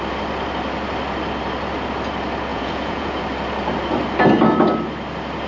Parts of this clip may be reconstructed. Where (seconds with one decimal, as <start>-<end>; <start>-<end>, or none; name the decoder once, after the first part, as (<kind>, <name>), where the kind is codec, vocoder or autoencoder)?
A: 2.5-3.2 (vocoder, Vocos)